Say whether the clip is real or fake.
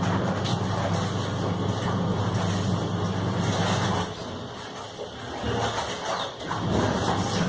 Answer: real